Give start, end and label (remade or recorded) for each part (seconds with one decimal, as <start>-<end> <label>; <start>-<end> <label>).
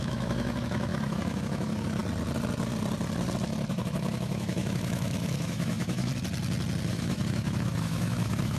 0.0-2.0 remade; 2.0-3.7 recorded; 3.7-6.1 remade; 6.1-6.9 recorded; 6.9-8.6 remade